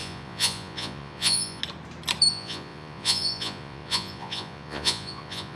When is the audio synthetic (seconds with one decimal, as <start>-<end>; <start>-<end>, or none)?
0.0-1.6; 2.3-5.6